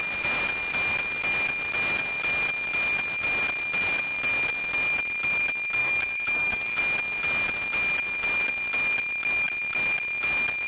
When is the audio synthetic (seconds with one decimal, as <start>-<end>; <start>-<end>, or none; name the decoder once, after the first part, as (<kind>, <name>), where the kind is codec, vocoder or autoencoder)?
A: 5.8-6.8 (autoencoder, DAC-VAE)

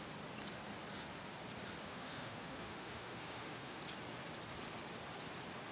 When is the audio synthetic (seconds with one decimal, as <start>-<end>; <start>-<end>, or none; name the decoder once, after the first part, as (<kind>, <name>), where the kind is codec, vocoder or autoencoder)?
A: 1.8-3.8 (autoencoder, DAC-VAE)

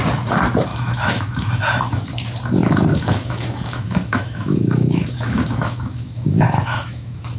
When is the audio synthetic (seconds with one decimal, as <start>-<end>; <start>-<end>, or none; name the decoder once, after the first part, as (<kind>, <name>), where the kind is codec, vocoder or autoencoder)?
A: 0.7-1.5 (autoencoder, DAC-VAE); 2.9-7.4

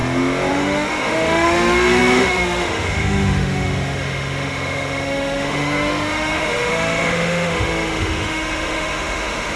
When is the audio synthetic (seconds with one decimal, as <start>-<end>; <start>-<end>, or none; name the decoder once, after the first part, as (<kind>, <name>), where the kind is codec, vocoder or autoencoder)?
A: 0.5-9.6 (autoencoder, DAC-VAE)

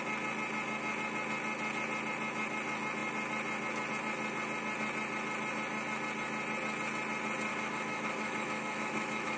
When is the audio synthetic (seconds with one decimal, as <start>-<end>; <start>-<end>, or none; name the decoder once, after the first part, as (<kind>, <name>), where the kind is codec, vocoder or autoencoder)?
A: 7.5-9.4 (autoencoder, DAC-VAE)

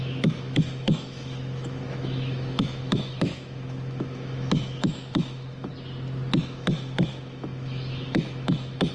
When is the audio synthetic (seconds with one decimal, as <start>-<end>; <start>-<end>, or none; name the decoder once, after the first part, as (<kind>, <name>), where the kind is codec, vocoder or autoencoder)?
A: 0.0-5.7 (autoencoder, DAC-VAE); 6.4-8.9

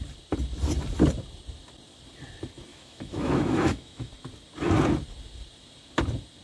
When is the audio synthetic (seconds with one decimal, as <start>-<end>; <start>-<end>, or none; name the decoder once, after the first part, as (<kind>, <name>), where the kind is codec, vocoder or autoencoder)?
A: 2.7-4.1 (autoencoder, DAC-VAE)